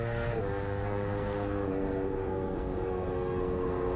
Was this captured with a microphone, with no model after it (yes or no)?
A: no